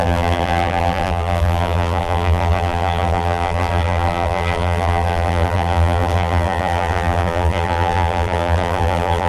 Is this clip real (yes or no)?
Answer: no